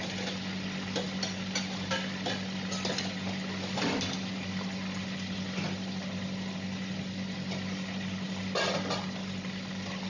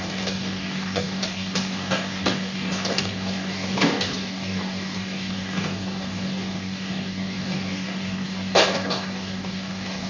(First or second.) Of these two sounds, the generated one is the second